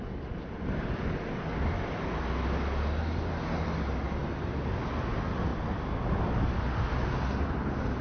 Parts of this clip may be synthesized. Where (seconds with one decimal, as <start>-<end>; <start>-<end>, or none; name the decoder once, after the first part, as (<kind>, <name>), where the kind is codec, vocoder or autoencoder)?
none

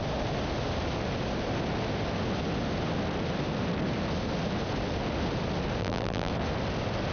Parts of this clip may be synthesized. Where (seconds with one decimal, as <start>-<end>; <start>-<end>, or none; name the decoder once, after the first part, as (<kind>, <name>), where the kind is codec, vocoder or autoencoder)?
5.8-6.3 (vocoder, BigVGAN v2)

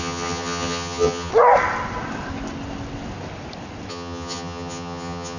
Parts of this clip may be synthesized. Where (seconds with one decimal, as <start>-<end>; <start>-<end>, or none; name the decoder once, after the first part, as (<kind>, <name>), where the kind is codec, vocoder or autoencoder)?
0.0-1.3 (vocoder, HiFi-GAN); 3.9-5.4

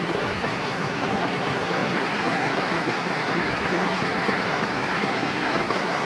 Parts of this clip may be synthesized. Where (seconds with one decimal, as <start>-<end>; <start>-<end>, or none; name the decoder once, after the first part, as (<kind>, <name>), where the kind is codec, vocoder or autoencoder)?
0.0-6.0 (codec, SNAC)

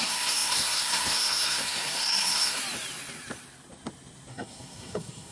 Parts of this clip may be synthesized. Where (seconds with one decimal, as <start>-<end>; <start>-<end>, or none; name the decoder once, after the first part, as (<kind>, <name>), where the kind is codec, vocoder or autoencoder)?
0.0-2.6 (codec, SNAC); 4.3-5.3

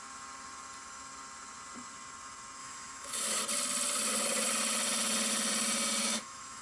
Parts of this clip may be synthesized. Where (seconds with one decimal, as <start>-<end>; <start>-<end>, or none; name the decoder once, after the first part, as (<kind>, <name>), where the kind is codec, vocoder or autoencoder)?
2.6-3.4 (autoencoder, DAC-VAE); 6.0-6.6

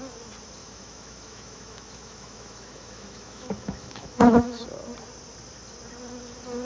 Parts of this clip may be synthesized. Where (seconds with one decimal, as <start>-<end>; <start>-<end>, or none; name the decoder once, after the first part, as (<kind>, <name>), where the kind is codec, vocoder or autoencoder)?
0.6-4.6 (autoencoder, DAC-VAE)